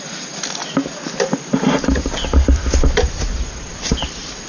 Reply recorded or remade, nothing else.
remade